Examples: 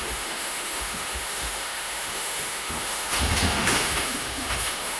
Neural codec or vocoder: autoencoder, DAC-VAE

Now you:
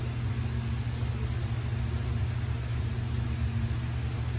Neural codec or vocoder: none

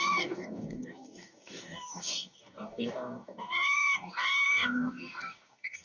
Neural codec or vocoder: codec, DAC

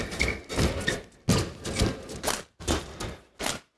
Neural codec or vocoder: none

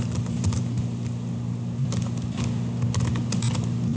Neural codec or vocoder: none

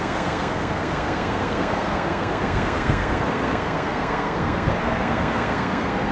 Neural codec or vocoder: codec, SNAC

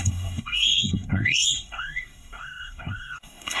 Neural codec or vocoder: codec, SNAC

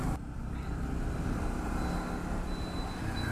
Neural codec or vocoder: none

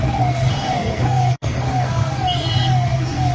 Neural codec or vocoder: codec, SNAC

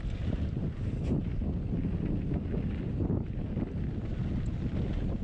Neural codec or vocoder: none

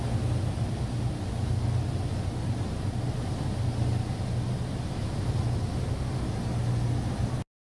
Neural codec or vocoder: none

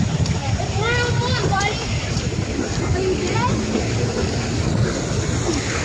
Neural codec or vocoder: none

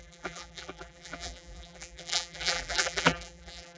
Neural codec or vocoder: vocoder, BigVGAN v2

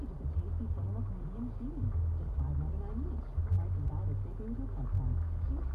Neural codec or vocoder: none